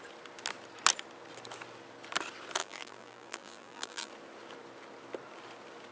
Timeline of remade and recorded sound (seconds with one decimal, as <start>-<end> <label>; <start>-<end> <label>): 0.0-2.6 recorded; 2.6-4.1 remade; 4.1-5.9 recorded